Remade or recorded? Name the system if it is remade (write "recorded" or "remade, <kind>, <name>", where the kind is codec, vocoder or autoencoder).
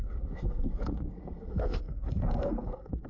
remade, codec, SNAC